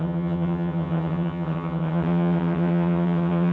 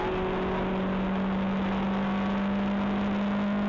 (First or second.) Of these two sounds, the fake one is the first